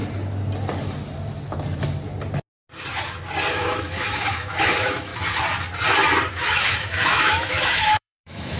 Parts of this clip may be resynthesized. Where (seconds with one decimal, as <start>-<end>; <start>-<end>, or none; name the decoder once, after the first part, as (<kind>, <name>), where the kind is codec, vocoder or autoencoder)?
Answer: 3.5-5.1 (autoencoder, DAC-VAE); 6.3-8.6